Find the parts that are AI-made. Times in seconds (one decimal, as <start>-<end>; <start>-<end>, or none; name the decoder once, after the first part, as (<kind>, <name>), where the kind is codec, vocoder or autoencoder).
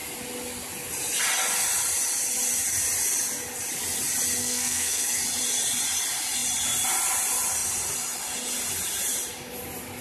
4.4-5.2 (codec, SNAC)